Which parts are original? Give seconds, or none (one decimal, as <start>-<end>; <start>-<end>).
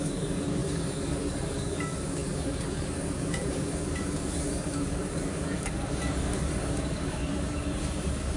none